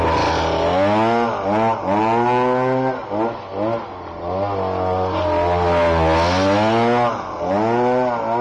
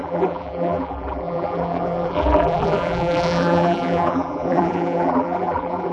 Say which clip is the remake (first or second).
second